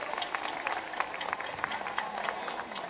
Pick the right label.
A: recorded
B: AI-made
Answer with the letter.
A